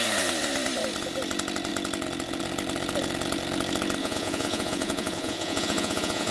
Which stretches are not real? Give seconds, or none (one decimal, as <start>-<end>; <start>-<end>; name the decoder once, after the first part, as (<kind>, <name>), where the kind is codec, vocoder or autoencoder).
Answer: 4.0-6.3 (vocoder, Vocos)